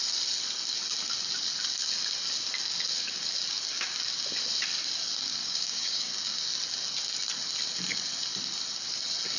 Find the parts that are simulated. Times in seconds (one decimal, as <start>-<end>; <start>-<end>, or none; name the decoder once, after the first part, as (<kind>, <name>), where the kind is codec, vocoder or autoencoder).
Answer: 5.4-6.1 (codec, DAC)